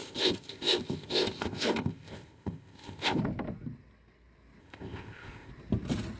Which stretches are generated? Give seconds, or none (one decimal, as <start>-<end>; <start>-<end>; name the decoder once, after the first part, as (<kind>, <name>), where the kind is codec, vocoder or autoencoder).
0.0-3.2 (codec, ZipCodec); 4.6-5.5